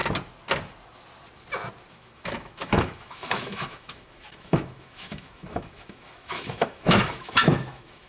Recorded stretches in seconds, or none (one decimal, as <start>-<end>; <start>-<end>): 0.0-1.9